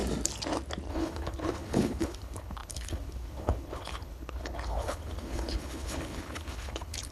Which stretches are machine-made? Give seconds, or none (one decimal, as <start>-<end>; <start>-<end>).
0.9-7.1